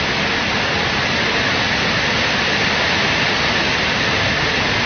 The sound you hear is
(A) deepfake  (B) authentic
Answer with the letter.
B